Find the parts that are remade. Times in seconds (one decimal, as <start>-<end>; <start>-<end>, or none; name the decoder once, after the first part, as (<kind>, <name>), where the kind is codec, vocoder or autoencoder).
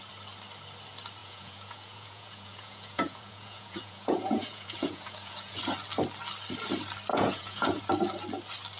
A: 1.2-5.6 (vocoder, Vocos); 7.1-7.8